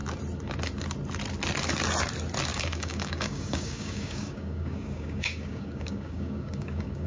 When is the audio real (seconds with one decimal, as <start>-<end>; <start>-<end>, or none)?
0.0-2.5